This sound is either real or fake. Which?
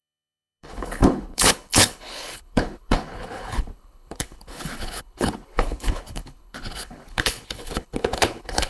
fake